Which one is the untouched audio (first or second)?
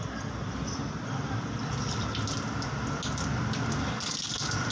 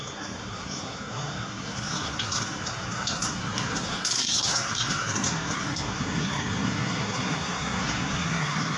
first